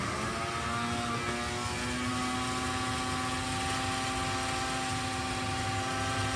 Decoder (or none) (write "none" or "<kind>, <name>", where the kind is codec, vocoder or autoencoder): none